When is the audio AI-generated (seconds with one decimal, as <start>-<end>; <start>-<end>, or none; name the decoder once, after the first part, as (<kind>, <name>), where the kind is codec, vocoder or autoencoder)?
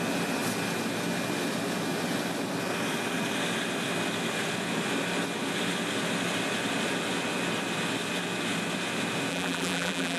9.3-10.2 (vocoder, BigVGAN v2)